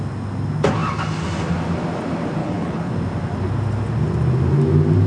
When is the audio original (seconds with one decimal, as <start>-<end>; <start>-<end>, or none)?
0.0-2.4; 2.9-5.1